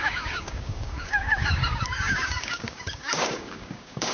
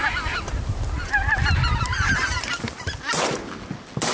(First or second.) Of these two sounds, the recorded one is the second